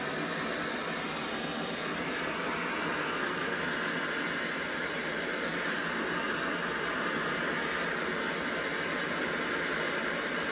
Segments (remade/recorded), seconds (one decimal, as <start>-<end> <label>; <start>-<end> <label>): 0.0-3.0 recorded; 3.0-3.6 remade; 3.6-10.5 recorded